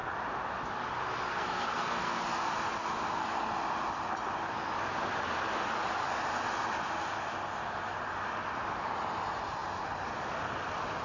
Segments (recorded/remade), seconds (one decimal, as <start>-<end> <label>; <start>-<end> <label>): 0.0-1.3 recorded; 1.3-2.2 remade; 2.2-11.0 recorded